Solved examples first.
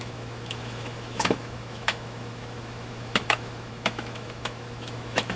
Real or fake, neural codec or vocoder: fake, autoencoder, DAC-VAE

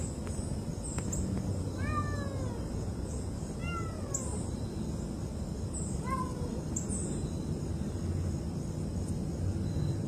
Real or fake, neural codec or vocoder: real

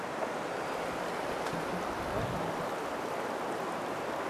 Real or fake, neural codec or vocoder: real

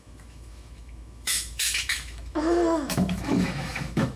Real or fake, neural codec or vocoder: fake, autoencoder, DAC-VAE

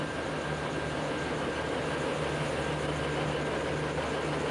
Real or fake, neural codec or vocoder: real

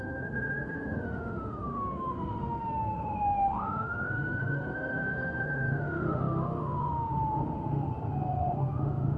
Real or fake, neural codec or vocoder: fake, autoencoder, DAC-VAE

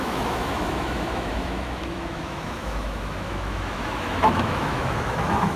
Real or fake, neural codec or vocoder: fake, autoencoder, DAC-VAE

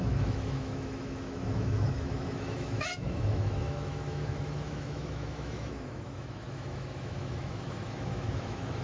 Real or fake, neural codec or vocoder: fake, autoencoder, DAC-VAE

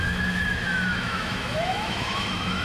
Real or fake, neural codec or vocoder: fake, autoencoder, DAC-VAE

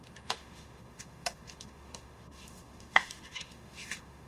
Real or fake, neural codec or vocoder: fake, autoencoder, DAC-VAE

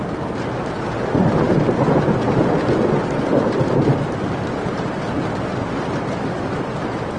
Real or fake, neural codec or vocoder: real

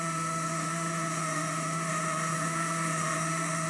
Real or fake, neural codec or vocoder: fake, autoencoder, DAC-VAE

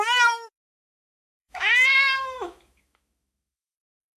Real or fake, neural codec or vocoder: fake, autoencoder, DAC-VAE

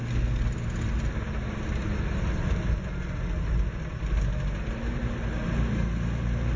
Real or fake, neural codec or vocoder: real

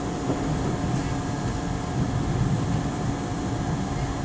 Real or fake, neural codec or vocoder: real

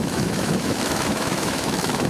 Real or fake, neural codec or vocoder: fake, autoencoder, DAC-VAE